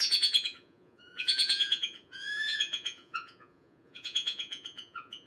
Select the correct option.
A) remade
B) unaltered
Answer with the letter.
A